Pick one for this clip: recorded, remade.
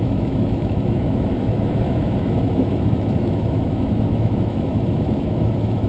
remade